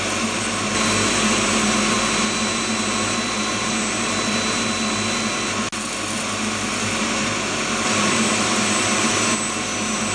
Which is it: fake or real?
real